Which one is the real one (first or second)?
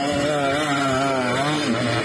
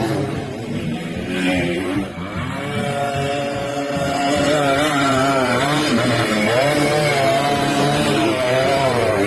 first